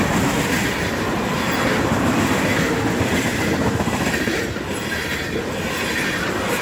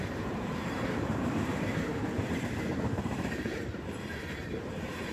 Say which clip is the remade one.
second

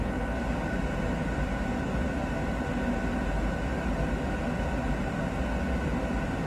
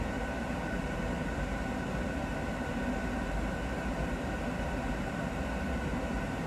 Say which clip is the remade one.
second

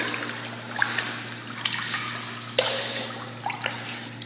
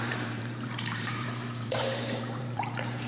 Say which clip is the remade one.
second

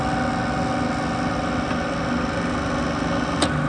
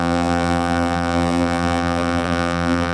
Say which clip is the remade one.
second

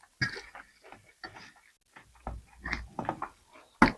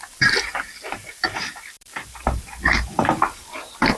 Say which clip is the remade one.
second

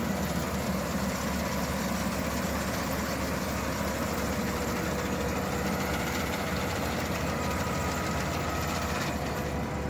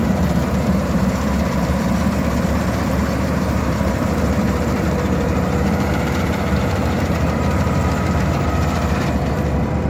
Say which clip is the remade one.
second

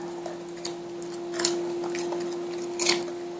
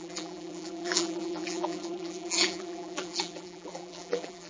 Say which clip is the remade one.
second